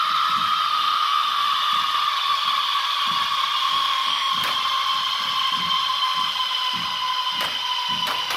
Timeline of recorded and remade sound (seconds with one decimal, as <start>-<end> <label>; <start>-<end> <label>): 0.0-0.7 recorded; 0.7-1.5 remade; 1.5-3.6 recorded; 3.6-4.3 remade; 4.3-8.4 recorded